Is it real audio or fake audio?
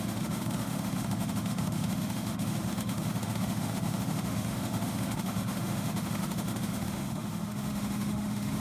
fake